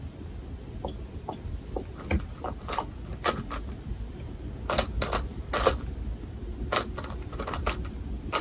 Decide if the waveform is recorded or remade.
recorded